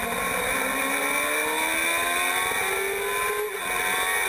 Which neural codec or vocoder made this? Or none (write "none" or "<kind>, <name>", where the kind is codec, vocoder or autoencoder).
none